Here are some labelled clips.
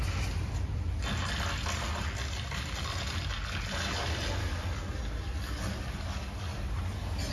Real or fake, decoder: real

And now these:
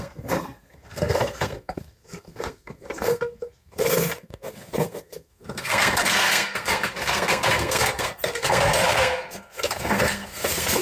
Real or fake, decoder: fake, codec, SNAC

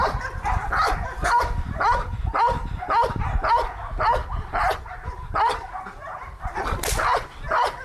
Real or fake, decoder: real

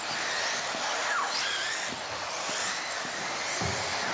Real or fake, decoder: real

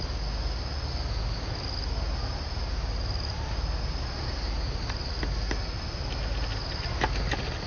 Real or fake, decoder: real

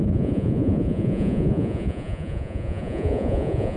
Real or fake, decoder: fake, vocoder, Vocos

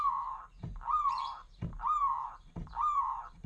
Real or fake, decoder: fake, vocoder, BigVGAN v2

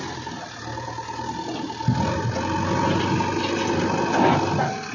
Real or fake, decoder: real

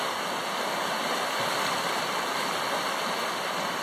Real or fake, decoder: real